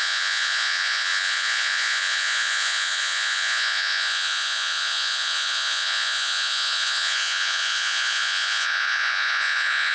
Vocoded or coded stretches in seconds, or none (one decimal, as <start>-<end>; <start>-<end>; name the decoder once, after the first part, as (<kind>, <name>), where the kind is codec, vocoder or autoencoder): 0.0-9.9 (vocoder, Vocos)